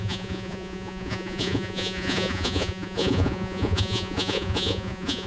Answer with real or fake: fake